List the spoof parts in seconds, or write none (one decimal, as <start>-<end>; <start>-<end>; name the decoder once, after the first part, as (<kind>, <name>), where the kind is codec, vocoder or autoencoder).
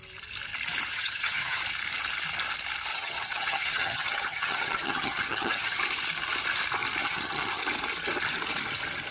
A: 0.9-1.6 (vocoder, HiFi-GAN); 2.9-5.8; 7.0-7.6